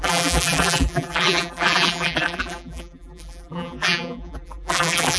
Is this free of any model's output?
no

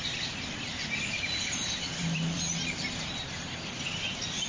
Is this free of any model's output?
no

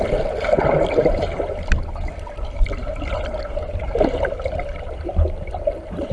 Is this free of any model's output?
yes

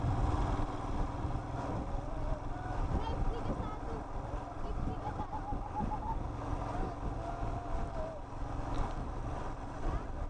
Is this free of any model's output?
yes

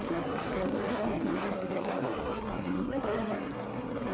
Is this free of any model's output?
no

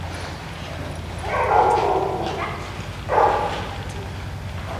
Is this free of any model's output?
yes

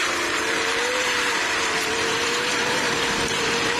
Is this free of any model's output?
no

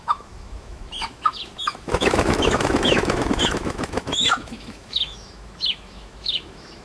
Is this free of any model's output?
no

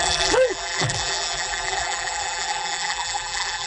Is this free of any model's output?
no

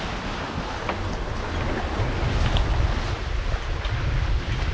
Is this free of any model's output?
yes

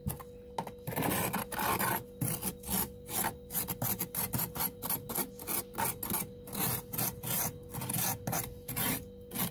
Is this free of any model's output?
yes